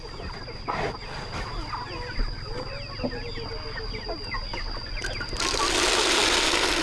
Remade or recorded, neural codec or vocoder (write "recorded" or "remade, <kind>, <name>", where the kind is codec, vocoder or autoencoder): recorded